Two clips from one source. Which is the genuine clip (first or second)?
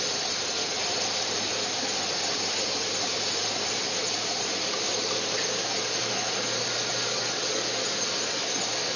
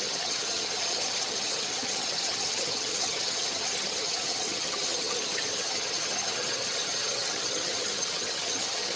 first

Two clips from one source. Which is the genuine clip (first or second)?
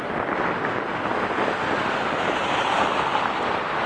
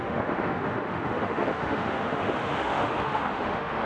first